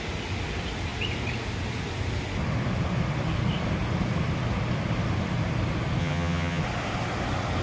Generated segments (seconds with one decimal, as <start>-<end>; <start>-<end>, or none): 6.0-6.6